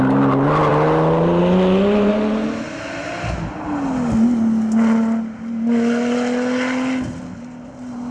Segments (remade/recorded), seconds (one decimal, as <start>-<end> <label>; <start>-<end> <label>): 0.0-8.1 recorded